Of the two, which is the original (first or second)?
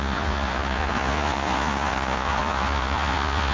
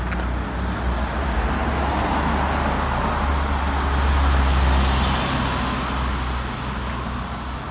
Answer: second